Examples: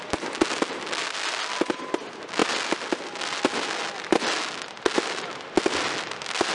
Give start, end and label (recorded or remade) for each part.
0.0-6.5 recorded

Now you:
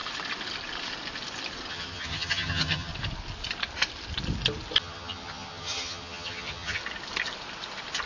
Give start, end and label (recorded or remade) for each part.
0.0-1.7 recorded; 1.7-2.9 remade; 2.9-4.8 recorded; 4.8-6.8 remade; 6.8-8.1 recorded

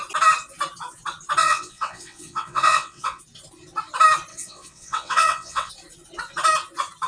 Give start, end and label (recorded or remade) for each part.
0.0-1.4 recorded; 1.4-3.2 remade; 3.2-4.3 recorded; 4.3-5.7 remade; 5.7-7.1 recorded

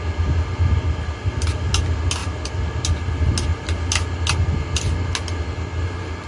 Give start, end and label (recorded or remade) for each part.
0.0-6.3 recorded

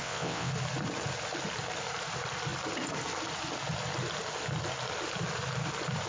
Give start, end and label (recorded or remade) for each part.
0.0-0.5 remade; 0.5-6.1 recorded

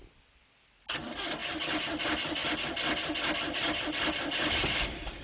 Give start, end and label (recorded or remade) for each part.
0.0-0.9 recorded; 0.9-1.4 remade; 1.4-2.0 recorded; 2.0-2.4 remade; 2.4-4.5 recorded; 4.5-5.2 remade

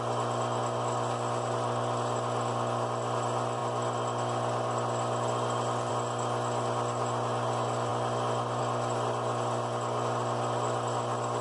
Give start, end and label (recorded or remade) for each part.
0.0-11.4 recorded